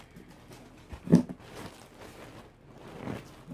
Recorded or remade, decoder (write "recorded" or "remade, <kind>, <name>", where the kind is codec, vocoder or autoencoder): recorded